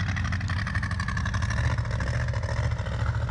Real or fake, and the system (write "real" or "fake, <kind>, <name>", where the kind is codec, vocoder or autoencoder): real